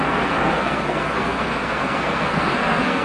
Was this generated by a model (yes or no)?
yes